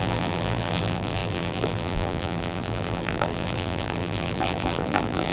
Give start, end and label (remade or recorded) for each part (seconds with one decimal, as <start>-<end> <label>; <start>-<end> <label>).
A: 0.0-5.3 remade

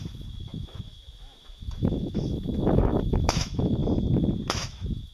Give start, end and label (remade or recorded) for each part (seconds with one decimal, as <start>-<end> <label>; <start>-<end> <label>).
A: 0.0-3.8 remade; 3.8-4.5 recorded; 4.5-5.1 remade

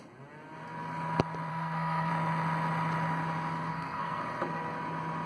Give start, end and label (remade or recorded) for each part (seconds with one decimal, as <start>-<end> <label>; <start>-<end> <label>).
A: 0.0-1.5 recorded; 1.5-2.1 remade; 2.1-3.7 recorded; 3.7-4.2 remade; 4.2-5.3 recorded

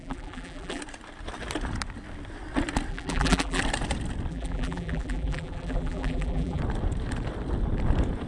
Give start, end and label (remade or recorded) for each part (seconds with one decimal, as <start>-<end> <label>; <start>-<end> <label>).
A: 0.0-0.8 remade; 0.8-2.9 recorded; 2.9-3.6 remade; 3.6-4.3 recorded; 4.3-6.6 remade; 6.6-8.3 recorded

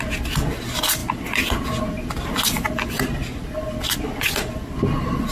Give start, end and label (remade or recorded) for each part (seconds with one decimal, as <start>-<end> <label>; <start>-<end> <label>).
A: 0.0-5.3 recorded

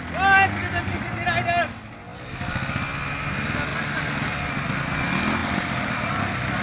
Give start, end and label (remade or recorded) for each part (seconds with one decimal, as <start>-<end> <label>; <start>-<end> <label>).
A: 0.0-0.6 recorded; 0.6-1.1 remade; 1.1-3.7 recorded; 3.7-4.3 remade; 4.3-5.4 recorded; 5.4-6.1 remade; 6.1-6.6 recorded